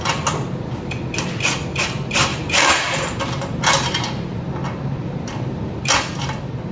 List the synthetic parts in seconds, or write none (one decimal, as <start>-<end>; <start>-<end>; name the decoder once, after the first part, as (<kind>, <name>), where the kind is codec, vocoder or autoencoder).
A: 2.3-4.4 (vocoder, BigVGAN v2)